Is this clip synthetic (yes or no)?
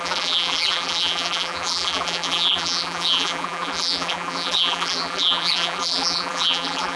yes